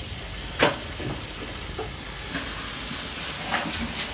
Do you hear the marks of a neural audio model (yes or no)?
no